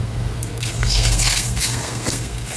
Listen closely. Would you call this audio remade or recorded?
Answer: remade